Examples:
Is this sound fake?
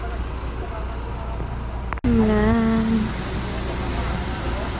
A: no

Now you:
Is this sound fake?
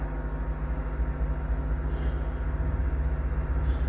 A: no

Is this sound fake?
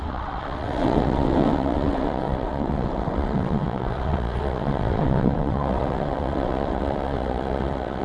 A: yes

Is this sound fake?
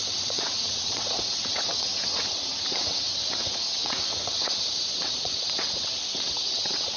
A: yes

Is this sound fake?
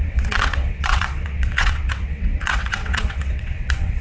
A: yes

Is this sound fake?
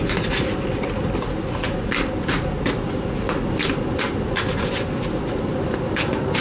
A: no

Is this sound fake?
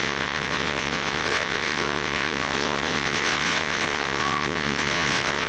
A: yes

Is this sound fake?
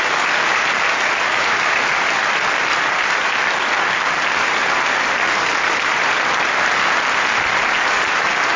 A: no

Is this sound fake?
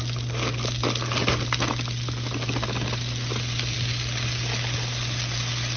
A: no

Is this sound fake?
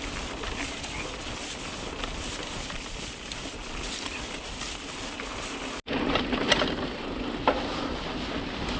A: no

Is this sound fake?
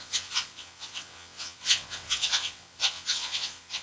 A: yes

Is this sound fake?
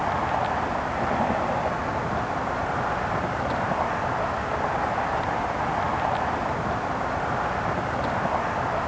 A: no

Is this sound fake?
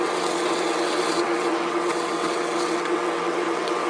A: yes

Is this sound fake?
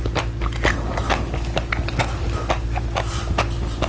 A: no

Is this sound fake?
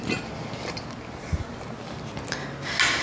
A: no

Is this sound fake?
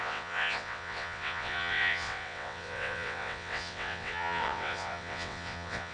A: yes